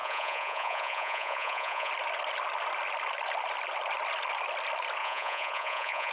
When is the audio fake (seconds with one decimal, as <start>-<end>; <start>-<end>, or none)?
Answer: 0.0-1.9; 5.0-6.1